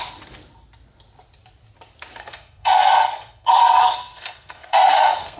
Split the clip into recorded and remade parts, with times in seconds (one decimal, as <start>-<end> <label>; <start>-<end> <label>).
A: 0.0-2.2 recorded; 2.2-5.4 remade